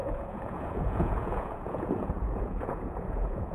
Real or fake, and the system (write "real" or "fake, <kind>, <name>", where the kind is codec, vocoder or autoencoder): fake, vocoder, Vocos